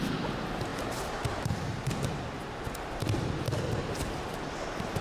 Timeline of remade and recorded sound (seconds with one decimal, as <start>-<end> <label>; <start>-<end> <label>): 0.0-5.0 recorded